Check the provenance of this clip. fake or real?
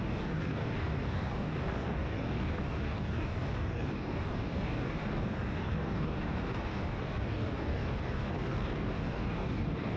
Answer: fake